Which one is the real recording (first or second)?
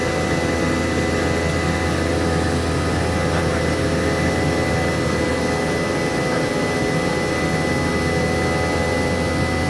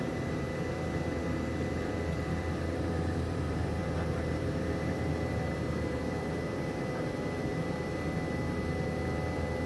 first